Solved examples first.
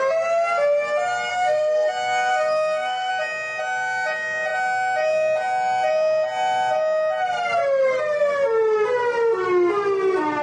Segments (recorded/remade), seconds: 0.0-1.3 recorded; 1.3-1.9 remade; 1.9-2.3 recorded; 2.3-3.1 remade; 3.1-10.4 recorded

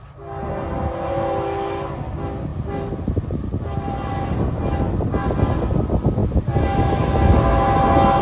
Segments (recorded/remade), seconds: 0.0-8.2 recorded

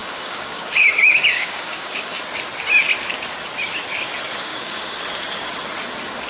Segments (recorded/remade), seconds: 0.0-2.2 remade; 2.2-4.4 recorded; 4.4-5.0 remade; 5.0-6.3 recorded

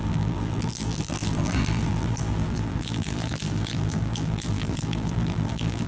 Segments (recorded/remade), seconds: 0.0-5.9 remade

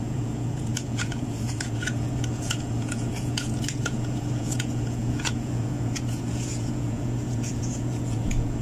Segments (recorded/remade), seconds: 0.0-8.6 remade

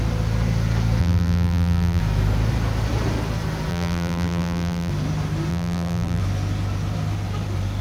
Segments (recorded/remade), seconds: 0.0-1.0 recorded; 1.0-2.0 remade; 2.0-3.7 recorded; 3.7-4.9 remade; 4.9-5.5 recorded; 5.5-6.2 remade; 6.2-7.8 recorded

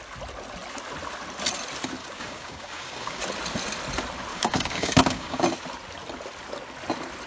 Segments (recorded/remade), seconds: 0.0-2.0 recorded; 2.0-3.2 remade; 3.2-4.3 recorded; 4.3-5.4 remade; 5.4-7.3 recorded

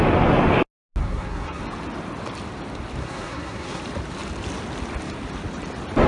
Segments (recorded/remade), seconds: 0.0-1.0 recorded; 1.0-1.6 remade; 1.6-3.0 recorded; 3.0-3.8 remade; 3.8-6.1 recorded